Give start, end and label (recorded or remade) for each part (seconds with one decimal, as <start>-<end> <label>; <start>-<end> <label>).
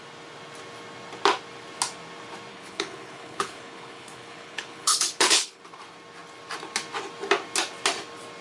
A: 0.0-2.5 recorded; 2.5-5.6 remade; 5.6-8.4 recorded